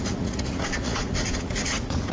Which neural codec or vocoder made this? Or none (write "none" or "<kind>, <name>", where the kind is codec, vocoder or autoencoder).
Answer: vocoder, Vocos